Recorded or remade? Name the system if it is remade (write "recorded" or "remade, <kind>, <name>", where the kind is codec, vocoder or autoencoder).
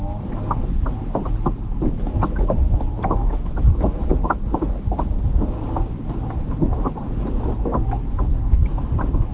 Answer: recorded